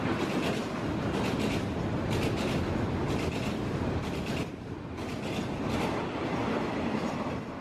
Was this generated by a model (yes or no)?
no